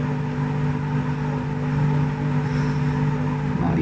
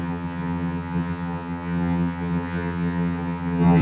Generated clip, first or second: second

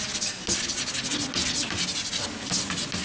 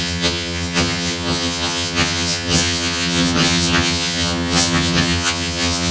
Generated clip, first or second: second